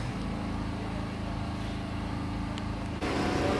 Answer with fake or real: real